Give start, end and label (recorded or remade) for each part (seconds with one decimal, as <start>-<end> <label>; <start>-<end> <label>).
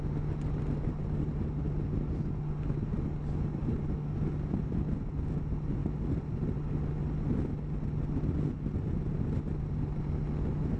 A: 0.0-10.8 recorded